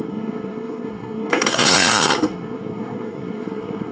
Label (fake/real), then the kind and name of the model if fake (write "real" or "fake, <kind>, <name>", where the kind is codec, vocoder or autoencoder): fake, codec, SNAC